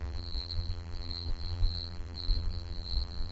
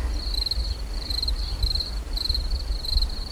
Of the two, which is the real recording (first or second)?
second